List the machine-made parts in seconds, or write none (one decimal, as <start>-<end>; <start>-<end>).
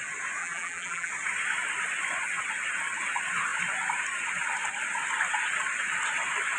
0.4-1.1